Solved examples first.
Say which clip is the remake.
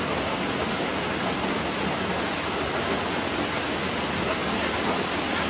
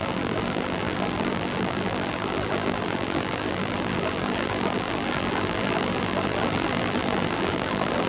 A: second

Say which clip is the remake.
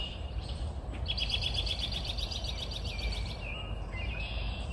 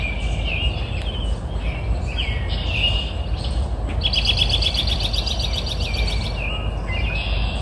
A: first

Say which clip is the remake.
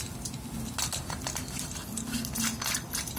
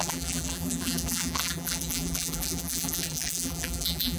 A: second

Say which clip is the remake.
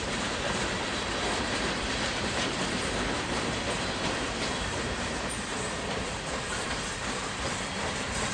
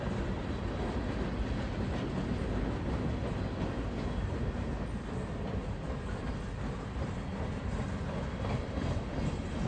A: first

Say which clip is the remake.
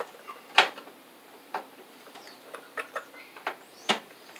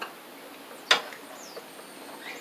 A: first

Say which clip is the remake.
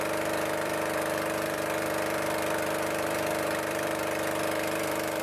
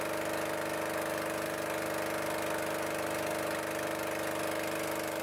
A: first